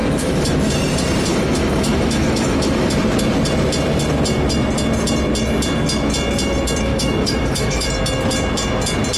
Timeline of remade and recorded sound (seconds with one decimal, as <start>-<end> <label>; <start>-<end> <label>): 0.0-0.6 remade; 0.6-1.3 recorded; 1.3-2.9 remade; 2.9-6.9 recorded; 6.9-7.9 remade; 7.9-9.2 recorded